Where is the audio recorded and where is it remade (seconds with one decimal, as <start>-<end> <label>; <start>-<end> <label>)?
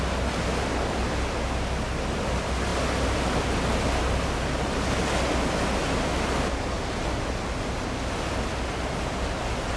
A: 0.0-9.8 recorded